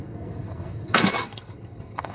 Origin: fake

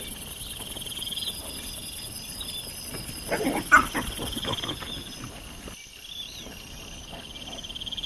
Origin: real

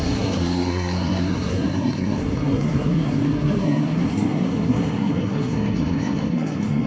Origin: fake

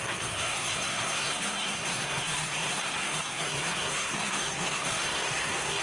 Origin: fake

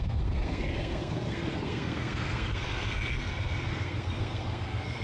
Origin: fake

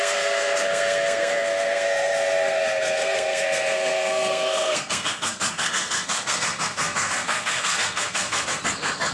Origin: fake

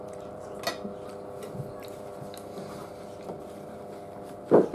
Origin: real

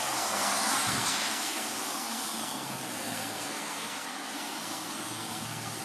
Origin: fake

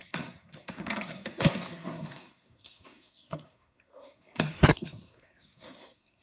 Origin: fake